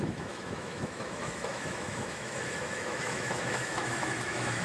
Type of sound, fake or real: fake